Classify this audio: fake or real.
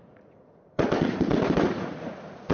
fake